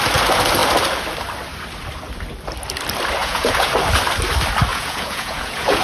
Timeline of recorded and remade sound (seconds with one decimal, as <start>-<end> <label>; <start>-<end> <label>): 0.0-3.2 recorded; 3.2-3.7 remade; 3.7-4.7 recorded; 4.7-5.8 remade

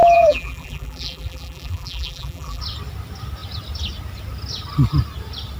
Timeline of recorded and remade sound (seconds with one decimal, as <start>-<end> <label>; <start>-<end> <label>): 0.0-2.6 remade; 2.6-5.6 recorded